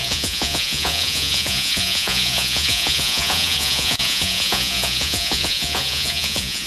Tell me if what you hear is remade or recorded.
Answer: remade